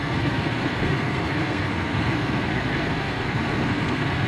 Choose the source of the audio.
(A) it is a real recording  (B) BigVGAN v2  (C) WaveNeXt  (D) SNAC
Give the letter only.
D